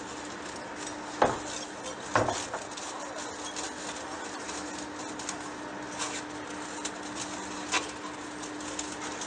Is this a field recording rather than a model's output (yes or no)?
yes